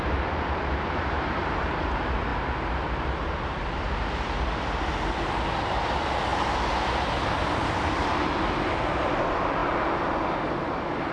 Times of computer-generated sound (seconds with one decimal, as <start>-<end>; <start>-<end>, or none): none